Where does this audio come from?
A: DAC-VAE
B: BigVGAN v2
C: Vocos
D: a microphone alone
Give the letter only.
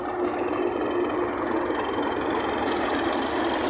D